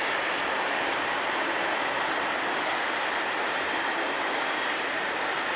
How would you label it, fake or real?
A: real